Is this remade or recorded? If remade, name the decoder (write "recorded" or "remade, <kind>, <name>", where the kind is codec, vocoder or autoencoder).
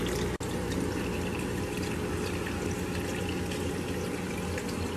recorded